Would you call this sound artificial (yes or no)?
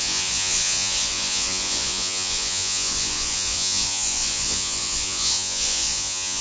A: yes